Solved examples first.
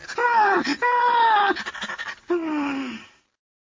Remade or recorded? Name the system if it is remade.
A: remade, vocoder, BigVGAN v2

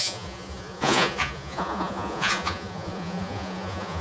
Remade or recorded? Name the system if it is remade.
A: remade, vocoder, Vocos